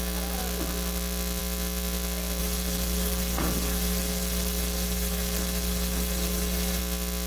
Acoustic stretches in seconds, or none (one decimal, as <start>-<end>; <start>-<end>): 0.0-2.4; 6.8-7.3